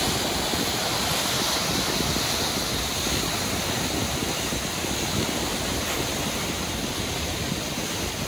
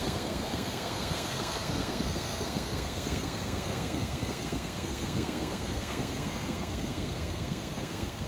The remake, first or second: second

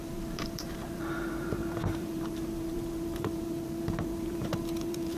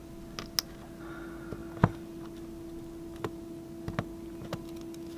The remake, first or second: first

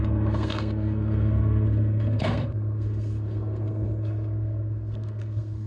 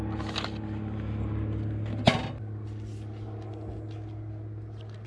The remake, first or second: first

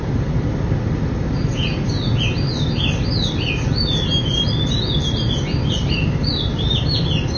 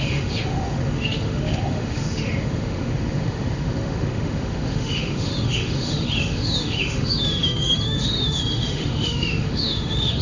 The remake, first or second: second